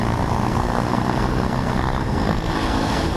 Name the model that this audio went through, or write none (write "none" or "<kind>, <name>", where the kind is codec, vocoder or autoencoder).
codec, SNAC